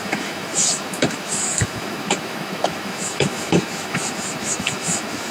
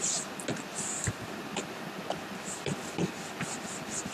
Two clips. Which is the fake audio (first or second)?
first